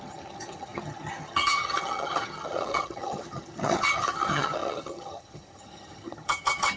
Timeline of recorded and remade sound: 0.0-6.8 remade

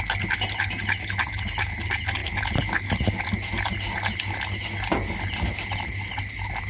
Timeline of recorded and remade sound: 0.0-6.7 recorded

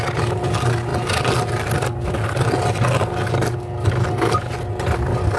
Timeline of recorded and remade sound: 0.0-5.4 recorded